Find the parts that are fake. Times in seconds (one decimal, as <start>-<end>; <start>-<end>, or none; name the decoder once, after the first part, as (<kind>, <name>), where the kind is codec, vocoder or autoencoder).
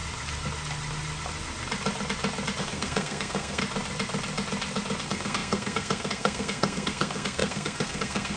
2.6-3.6 (codec, SNAC); 5.0-8.4